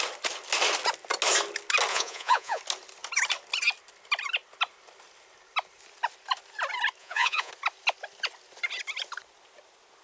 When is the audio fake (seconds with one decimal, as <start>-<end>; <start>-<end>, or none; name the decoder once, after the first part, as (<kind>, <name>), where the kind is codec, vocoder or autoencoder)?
1.9-2.6 (vocoder, Vocos); 7.0-7.5